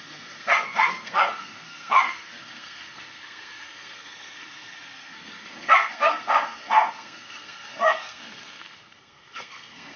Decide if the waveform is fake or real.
fake